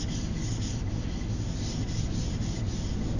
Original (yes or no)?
yes